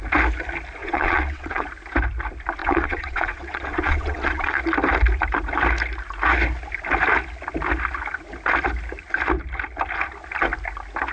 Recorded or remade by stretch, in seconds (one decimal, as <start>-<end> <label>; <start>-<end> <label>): 0.0-0.8 recorded; 0.8-1.6 remade; 1.6-2.6 recorded; 2.6-4.6 remade; 4.6-11.1 recorded